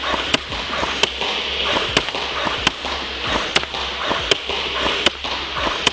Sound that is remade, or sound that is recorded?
recorded